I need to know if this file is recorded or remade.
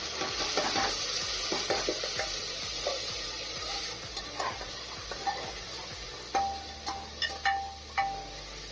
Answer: recorded